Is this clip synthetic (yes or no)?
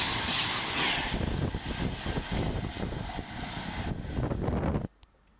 no